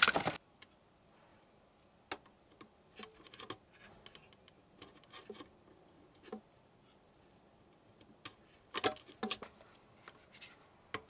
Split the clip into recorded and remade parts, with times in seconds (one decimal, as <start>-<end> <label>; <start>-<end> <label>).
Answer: 0.0-11.1 recorded